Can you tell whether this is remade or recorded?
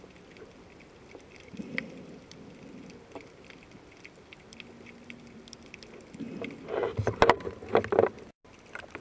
recorded